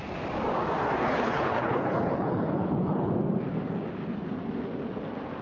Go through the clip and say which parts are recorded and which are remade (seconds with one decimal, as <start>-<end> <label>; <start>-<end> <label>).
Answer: 0.0-1.0 recorded; 1.0-3.1 remade; 3.1-5.4 recorded